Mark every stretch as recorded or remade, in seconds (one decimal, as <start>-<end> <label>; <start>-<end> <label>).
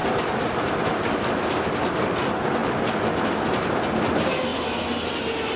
0.0-2.6 recorded; 2.6-3.4 remade; 3.4-5.6 recorded